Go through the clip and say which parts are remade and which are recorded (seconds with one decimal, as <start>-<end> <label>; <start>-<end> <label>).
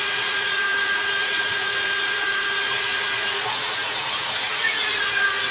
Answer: 0.0-5.5 remade